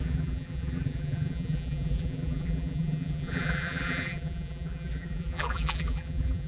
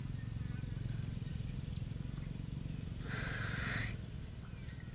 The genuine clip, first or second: second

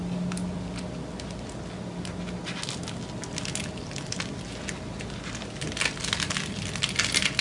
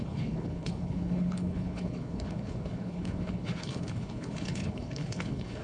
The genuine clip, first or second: first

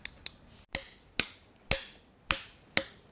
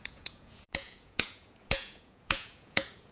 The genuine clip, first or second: first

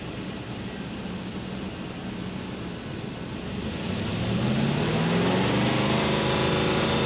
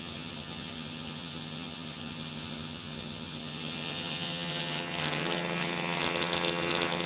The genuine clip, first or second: first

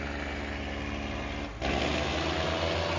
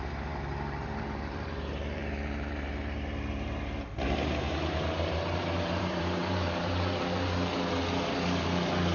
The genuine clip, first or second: first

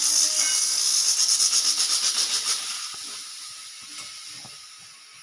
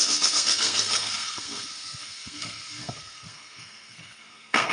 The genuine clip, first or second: first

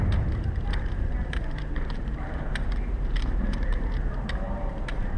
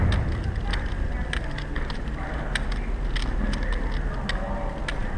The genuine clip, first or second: second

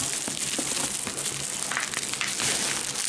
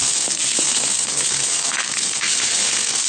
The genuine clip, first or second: first